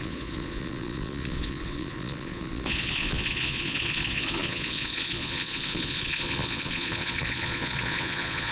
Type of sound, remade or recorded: remade